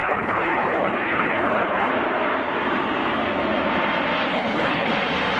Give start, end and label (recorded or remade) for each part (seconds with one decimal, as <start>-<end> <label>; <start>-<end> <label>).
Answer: 0.0-1.9 remade; 1.9-4.3 recorded; 4.3-4.9 remade; 4.9-5.4 recorded